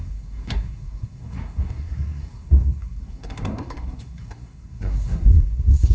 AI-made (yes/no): yes